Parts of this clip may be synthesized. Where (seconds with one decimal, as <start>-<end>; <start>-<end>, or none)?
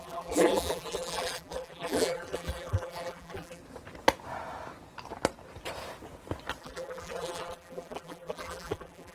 0.0-3.6; 6.6-9.1